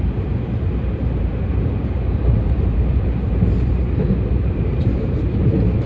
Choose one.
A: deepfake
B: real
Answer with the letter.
A